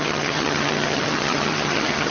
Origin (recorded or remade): remade